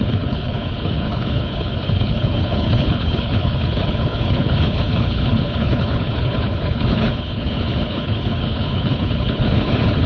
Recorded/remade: remade